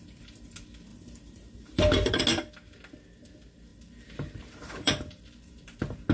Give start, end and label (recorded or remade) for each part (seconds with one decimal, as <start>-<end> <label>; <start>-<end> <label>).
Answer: 0.0-0.9 recorded; 0.9-2.2 remade; 2.2-3.7 recorded; 3.7-5.6 remade; 5.6-6.1 recorded

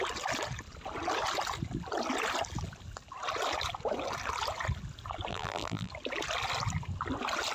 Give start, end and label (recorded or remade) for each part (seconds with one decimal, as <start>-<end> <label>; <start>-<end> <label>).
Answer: 0.0-5.3 recorded; 5.3-5.9 remade; 5.9-7.5 recorded

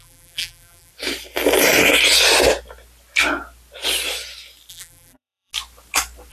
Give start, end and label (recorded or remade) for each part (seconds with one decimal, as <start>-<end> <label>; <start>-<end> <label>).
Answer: 0.0-0.9 remade; 0.9-4.7 recorded; 4.7-5.5 remade; 5.5-6.3 recorded

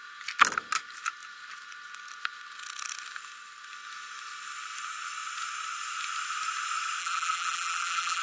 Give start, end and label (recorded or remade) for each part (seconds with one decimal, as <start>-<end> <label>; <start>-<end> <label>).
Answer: 0.0-7.0 recorded; 7.0-8.2 remade

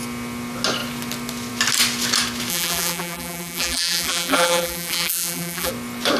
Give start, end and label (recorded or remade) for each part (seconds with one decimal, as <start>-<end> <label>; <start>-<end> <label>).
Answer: 0.0-2.5 recorded; 2.5-5.7 remade; 5.7-6.2 recorded

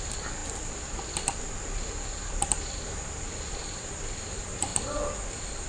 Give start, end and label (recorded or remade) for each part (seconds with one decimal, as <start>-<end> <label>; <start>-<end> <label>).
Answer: 0.0-4.7 recorded; 4.7-5.7 remade

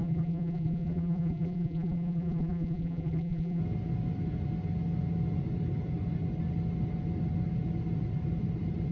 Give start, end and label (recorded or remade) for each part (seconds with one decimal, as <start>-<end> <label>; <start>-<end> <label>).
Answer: 0.0-3.6 remade; 3.6-8.9 recorded